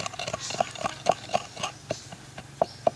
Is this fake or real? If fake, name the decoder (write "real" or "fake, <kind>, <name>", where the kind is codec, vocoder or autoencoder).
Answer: real